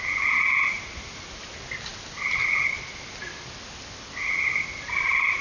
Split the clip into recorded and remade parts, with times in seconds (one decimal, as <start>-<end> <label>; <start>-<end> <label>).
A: 0.0-5.4 recorded

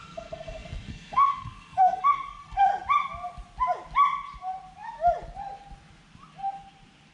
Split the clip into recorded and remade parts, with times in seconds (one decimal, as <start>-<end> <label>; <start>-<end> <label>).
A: 0.0-2.7 remade; 2.7-7.1 recorded

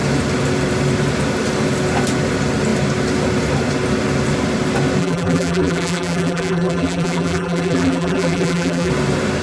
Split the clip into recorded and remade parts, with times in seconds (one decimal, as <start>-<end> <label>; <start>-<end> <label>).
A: 0.0-5.0 recorded; 5.0-8.9 remade; 8.9-9.4 recorded